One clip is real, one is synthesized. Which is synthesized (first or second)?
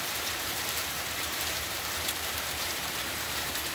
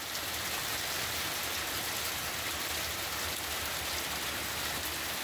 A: first